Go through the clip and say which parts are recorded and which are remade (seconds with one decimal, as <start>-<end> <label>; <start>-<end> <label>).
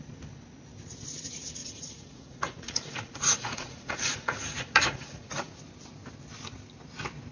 0.0-1.6 recorded; 1.6-5.6 remade; 5.6-7.3 recorded